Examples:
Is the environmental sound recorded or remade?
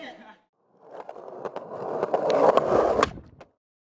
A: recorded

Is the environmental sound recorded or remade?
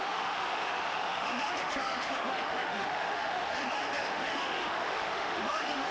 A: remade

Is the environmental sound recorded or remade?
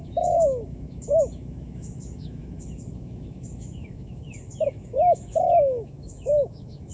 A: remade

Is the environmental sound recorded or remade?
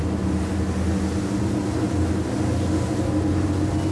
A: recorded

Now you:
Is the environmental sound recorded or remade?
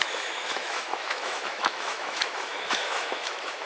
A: remade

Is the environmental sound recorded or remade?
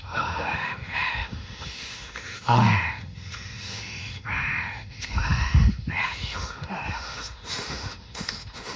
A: remade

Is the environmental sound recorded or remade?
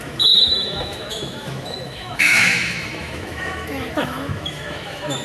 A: remade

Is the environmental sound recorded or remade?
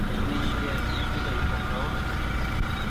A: recorded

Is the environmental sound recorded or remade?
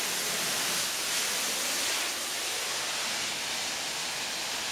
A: recorded